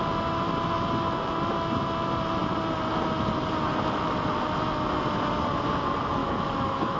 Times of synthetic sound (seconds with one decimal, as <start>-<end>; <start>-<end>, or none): 6.2-7.0